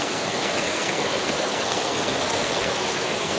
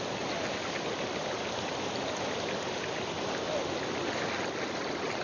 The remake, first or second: first